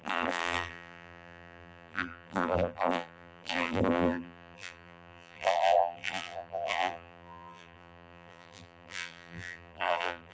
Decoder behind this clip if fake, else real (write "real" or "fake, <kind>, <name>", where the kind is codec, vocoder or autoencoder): fake, vocoder, BigVGAN v2